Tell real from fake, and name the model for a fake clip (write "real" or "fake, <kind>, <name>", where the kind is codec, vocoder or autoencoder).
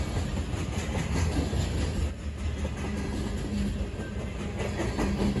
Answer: real